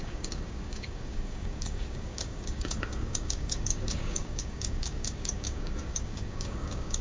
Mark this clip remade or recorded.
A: remade